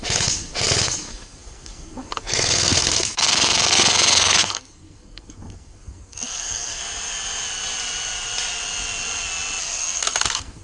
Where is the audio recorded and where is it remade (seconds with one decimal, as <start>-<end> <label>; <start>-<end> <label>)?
0.0-6.8 remade; 6.8-9.6 recorded; 9.6-10.6 remade